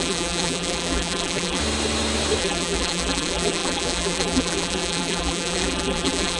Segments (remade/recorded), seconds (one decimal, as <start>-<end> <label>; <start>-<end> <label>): 0.0-1.6 remade; 1.6-2.4 recorded; 2.4-6.4 remade